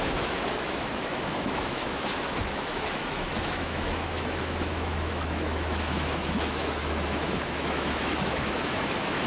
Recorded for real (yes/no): no